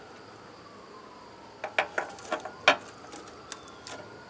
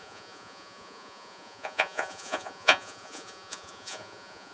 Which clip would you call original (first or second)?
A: first